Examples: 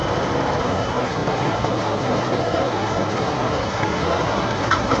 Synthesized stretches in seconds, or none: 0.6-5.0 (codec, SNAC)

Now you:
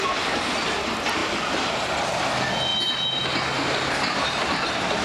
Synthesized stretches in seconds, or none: none

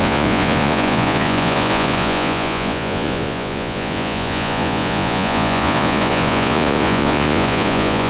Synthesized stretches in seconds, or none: 0.0-8.1 (vocoder, Vocos)